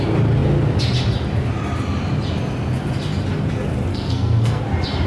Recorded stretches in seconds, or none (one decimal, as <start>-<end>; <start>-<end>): 0.0-3.9; 4.6-5.1